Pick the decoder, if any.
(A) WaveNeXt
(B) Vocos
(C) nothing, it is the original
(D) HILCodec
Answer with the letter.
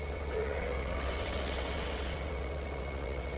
A